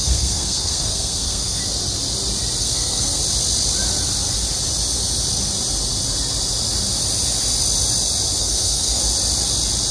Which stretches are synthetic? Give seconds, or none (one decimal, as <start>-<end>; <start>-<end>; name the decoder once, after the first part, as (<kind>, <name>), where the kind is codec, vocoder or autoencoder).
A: 0.0-1.6 (codec, SNAC); 2.6-3.2; 8.4-9.0